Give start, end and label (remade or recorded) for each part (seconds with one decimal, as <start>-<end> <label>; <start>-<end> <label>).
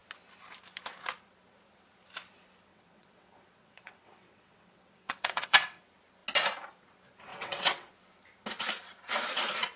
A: 0.0-2.7 recorded; 2.7-5.8 remade; 5.8-7.3 recorded; 7.3-7.9 remade; 7.9-9.8 recorded